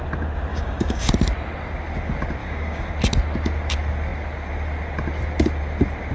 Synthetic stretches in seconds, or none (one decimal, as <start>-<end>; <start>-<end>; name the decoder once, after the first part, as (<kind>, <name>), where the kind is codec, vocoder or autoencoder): 0.5-1.1 (codec, DAC); 2.4-2.9